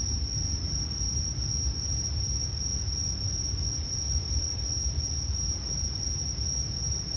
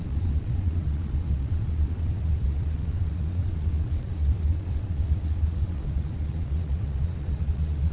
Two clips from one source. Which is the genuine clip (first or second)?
first